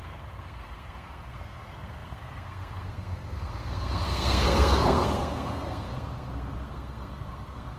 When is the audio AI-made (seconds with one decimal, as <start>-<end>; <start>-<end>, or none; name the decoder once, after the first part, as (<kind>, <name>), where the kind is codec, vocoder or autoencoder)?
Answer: 0.0-7.8 (codec, SNAC)

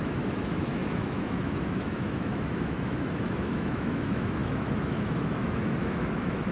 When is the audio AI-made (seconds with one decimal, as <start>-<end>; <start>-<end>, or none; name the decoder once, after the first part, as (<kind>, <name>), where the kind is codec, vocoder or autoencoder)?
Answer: 0.0-6.5 (autoencoder, DAC-VAE)